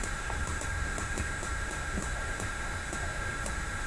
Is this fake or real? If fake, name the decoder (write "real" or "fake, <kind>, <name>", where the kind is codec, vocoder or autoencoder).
fake, autoencoder, DAC-VAE